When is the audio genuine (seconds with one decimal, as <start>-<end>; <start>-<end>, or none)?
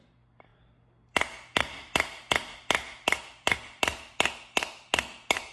0.0-5.5